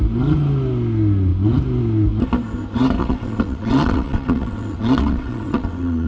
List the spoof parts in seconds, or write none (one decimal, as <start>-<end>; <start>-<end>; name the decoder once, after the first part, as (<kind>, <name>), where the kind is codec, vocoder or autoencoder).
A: 3.0-6.1 (vocoder, WaveNeXt)